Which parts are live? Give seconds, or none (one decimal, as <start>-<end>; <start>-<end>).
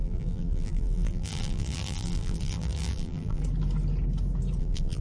3.4-4.6